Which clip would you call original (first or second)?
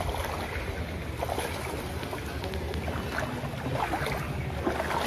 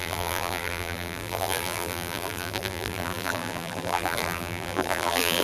first